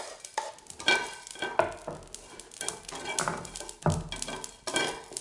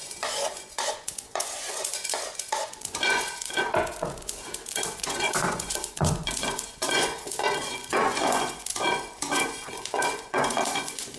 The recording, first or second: first